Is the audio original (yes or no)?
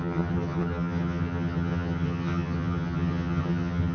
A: no